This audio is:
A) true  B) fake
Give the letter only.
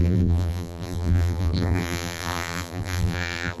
B